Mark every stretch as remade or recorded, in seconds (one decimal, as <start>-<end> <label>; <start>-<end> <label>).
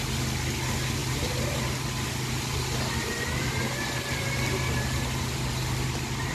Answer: 0.0-6.3 recorded